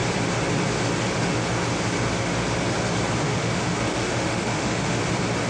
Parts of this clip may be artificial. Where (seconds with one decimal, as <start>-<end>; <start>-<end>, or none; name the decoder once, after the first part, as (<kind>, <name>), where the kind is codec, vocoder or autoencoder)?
3.2-5.0 (autoencoder, DAC-VAE)